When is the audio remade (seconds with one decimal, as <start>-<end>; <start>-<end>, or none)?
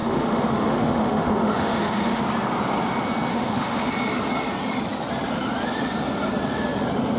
0.0-2.2; 3.3-3.9